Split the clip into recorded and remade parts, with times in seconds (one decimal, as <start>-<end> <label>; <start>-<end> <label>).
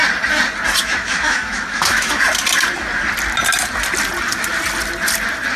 0.0-0.8 recorded; 0.8-2.2 remade; 2.2-5.6 recorded